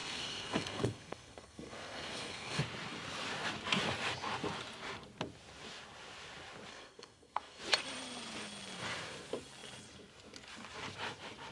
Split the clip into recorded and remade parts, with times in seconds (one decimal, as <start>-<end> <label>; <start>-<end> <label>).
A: 0.0-2.6 remade; 2.6-6.7 recorded; 6.7-7.6 remade; 7.6-11.5 recorded